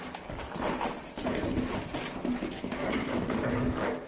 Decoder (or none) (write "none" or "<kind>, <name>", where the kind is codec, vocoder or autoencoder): none